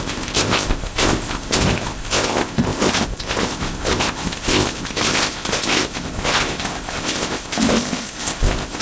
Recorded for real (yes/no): no